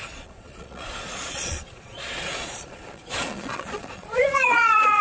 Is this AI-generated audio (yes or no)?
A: yes